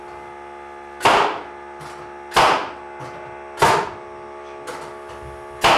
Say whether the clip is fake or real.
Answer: real